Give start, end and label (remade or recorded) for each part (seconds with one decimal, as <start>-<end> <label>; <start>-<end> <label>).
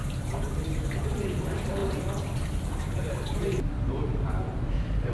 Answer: 0.0-1.0 remade; 1.0-1.8 recorded; 1.8-5.1 remade